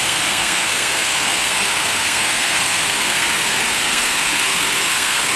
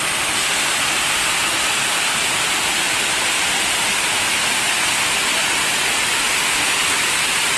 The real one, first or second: second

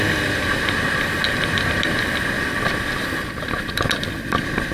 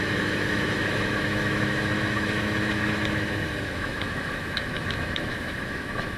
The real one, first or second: first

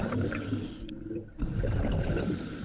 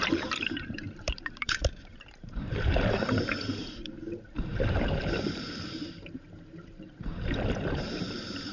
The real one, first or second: first